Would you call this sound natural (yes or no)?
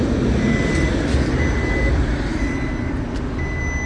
yes